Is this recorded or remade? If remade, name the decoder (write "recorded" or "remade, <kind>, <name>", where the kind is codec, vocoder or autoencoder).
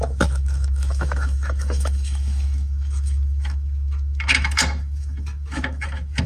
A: remade, autoencoder, DAC-VAE